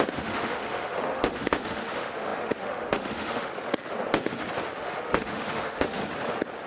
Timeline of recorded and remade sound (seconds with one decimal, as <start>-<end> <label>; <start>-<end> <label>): 0.0-3.5 remade; 3.5-4.8 recorded; 4.8-6.0 remade; 6.0-6.7 recorded

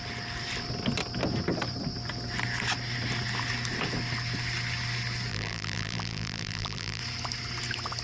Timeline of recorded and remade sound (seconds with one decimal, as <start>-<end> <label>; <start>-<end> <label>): 0.0-5.3 recorded; 5.3-7.0 remade; 7.0-8.0 recorded

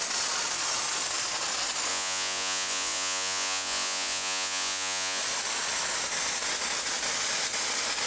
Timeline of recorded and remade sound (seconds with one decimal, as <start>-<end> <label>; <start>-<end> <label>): 0.0-1.9 recorded; 1.9-5.2 remade; 5.2-8.1 recorded

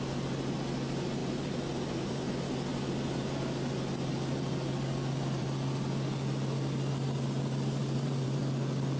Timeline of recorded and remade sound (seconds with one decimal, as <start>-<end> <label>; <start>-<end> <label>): 0.0-1.2 recorded; 1.2-2.1 remade; 2.1-7.8 recorded; 7.8-8.4 remade; 8.4-9.0 recorded

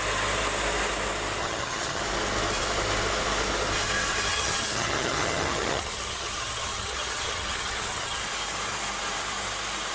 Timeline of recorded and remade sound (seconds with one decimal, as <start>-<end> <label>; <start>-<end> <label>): 0.0-1.4 recorded; 1.4-2.0 remade; 2.0-4.3 recorded; 4.3-8.2 remade; 8.2-9.9 recorded

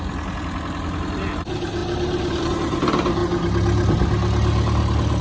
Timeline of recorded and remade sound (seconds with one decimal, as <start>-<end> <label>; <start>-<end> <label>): 0.0-5.2 recorded

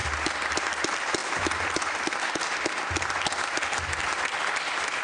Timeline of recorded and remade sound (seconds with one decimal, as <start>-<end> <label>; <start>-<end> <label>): 0.0-1.2 recorded; 1.2-2.2 remade; 2.2-5.0 recorded

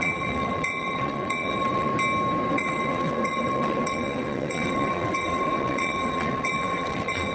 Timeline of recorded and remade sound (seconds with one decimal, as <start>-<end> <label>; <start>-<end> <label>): 0.0-1.9 remade; 1.9-2.5 recorded; 2.5-7.3 remade